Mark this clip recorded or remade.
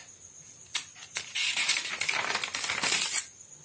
recorded